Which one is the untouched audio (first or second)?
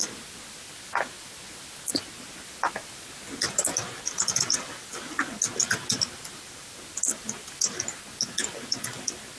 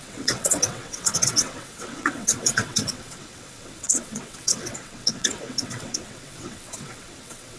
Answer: first